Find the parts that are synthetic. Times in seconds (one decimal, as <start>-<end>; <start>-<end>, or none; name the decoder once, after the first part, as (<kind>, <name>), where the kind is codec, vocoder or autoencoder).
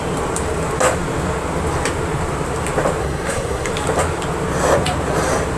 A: 3.0-3.7 (codec, SNAC)